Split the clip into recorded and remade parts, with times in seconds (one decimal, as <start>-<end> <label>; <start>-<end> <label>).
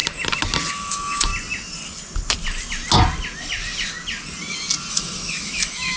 0.0-0.7 recorded; 0.7-1.3 remade; 1.3-4.9 recorded; 4.9-6.0 remade